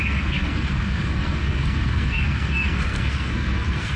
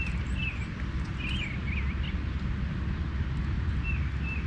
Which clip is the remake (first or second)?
first